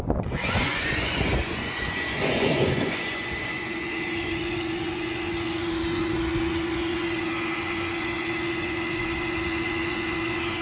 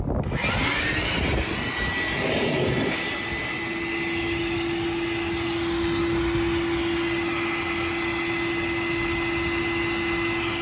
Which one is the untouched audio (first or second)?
second